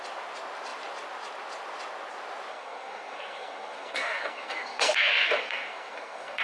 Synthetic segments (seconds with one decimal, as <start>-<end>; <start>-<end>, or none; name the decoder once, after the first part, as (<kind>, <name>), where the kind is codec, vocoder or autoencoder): 2.5-6.4 (codec, SNAC)